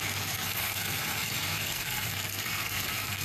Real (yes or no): no